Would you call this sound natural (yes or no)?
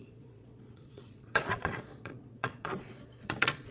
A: no